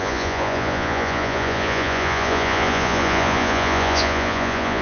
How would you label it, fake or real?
fake